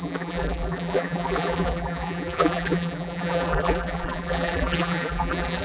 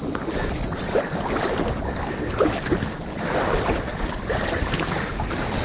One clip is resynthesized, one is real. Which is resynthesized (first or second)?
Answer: first